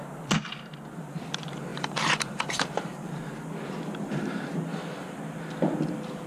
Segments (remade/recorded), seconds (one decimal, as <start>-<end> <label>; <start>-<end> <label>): 0.0-1.7 recorded; 1.7-3.1 remade; 3.1-4.7 recorded; 4.7-5.2 remade; 5.2-6.3 recorded